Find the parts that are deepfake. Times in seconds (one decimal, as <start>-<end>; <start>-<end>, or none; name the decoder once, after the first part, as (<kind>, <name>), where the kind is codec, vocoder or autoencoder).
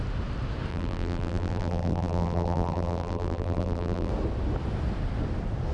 0.7-4.1 (vocoder, BigVGAN v2)